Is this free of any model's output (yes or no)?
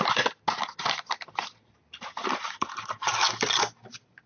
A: yes